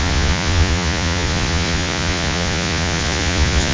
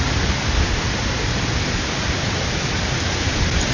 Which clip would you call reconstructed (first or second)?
first